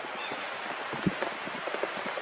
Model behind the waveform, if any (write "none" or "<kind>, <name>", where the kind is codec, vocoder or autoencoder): none